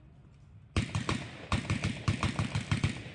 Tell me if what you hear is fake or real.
real